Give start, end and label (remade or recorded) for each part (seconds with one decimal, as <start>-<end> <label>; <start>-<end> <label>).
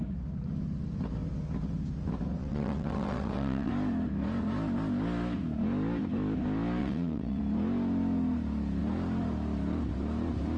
0.0-2.4 recorded; 2.4-3.7 remade; 3.7-6.8 recorded; 6.8-7.4 remade; 7.4-10.6 recorded